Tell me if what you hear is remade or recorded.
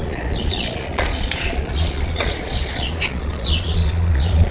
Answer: remade